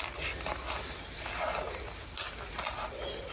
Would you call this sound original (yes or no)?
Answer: yes